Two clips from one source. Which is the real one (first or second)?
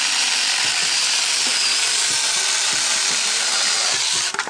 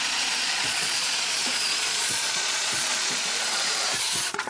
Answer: first